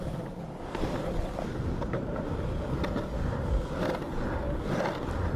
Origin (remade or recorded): recorded